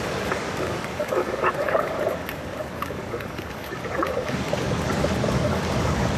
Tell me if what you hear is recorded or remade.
remade